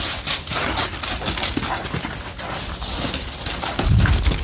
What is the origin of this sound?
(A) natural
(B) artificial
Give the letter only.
A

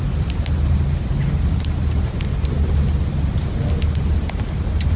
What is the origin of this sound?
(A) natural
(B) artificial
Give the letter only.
A